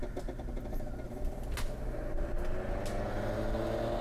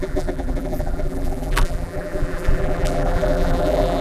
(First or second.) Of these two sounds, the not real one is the second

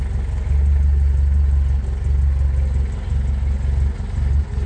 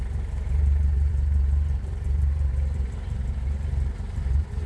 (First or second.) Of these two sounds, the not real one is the second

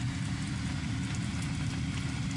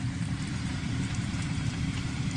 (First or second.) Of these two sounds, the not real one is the second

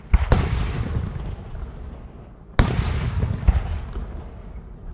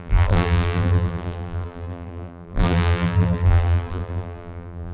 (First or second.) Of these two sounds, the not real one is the second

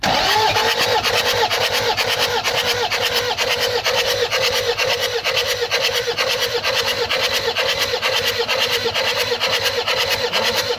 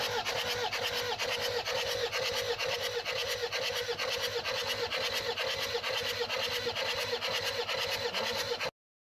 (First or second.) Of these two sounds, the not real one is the first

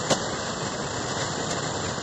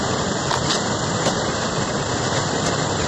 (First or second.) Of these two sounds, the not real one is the second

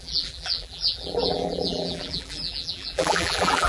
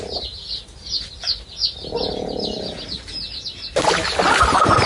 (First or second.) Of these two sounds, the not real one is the first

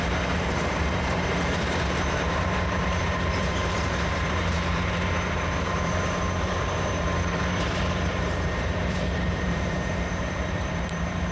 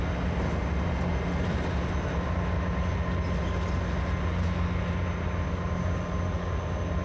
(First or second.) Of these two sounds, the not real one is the first